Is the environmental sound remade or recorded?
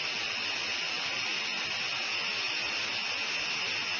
recorded